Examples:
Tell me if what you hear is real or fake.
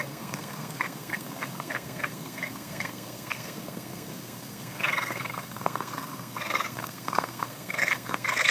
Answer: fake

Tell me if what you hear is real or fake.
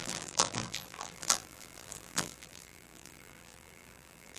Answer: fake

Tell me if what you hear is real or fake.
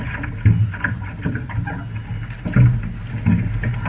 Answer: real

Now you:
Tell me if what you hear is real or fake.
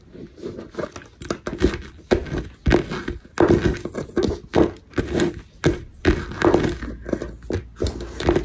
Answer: real